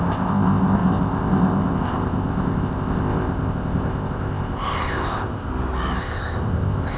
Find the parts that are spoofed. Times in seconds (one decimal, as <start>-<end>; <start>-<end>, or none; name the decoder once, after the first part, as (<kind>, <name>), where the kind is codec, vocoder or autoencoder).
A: 0.0-5.5 (codec, ZipCodec); 6.0-7.0